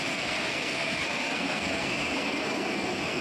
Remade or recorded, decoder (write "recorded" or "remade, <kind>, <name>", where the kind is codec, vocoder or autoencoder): remade, codec, SNAC